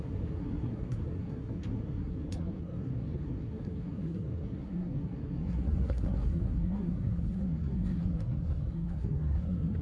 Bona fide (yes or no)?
no